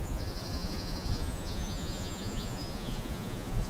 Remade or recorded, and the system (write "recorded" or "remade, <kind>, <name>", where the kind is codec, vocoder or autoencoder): remade, vocoder, Vocos